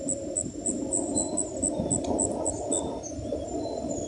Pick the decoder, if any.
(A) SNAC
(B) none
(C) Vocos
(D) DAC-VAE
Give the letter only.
B